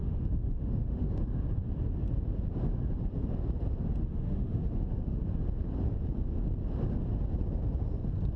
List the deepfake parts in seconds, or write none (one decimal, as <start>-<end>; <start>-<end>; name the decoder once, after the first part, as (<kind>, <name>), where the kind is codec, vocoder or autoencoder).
0.0-1.2 (autoencoder, DAC-VAE); 4.1-5.2

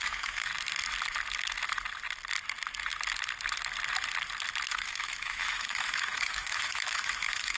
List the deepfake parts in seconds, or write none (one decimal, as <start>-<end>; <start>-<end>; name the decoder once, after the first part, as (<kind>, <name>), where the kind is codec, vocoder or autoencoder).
0.0-0.5 (autoencoder, DAC-VAE); 4.7-7.6

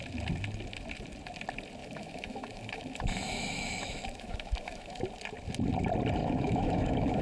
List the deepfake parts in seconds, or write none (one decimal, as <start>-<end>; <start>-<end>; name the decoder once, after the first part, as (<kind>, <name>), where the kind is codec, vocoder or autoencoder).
1.8-5.0 (autoencoder, DAC-VAE); 6.2-7.2

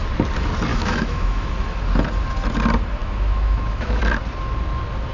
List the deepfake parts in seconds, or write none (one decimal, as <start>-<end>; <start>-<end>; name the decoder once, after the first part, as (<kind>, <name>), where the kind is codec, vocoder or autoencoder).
0.7-1.5 (autoencoder, DAC-VAE); 3.0-4.0